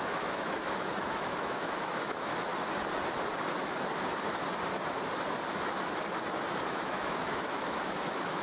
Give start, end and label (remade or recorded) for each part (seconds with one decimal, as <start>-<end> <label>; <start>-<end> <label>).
0.0-2.5 remade; 2.5-6.7 recorded; 6.7-8.4 remade